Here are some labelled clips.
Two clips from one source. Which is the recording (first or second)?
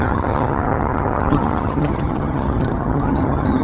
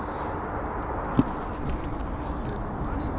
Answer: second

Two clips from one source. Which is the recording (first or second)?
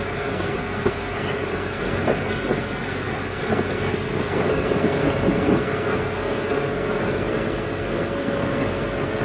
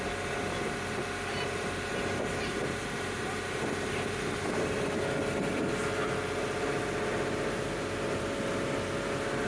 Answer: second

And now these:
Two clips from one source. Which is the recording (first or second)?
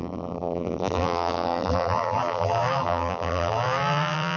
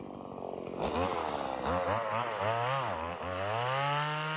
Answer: second